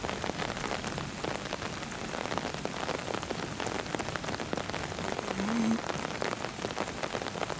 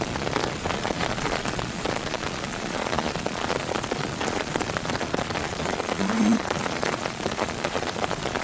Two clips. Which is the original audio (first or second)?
first